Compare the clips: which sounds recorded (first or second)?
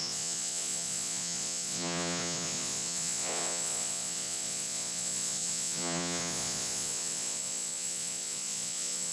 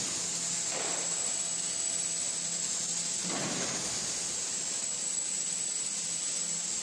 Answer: second